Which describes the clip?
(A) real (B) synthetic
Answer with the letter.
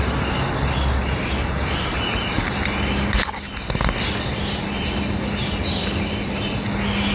A